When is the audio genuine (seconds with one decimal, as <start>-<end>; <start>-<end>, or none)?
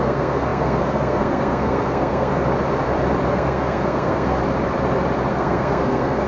2.3-3.3; 4.4-5.3